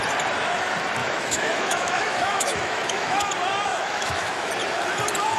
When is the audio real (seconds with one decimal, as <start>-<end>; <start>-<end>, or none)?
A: 0.0-1.0; 3.3-3.7; 4.5-5.4

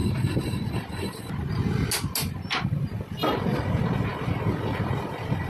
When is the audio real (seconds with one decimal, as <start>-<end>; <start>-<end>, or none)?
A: 0.0-5.5